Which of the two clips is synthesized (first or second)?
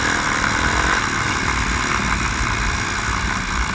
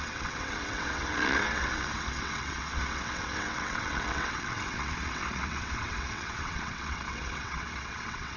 second